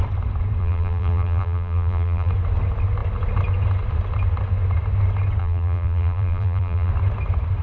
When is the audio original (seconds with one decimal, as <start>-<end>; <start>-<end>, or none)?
0.0-0.6; 2.3-5.4; 6.9-7.6